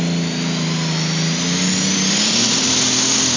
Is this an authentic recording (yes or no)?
yes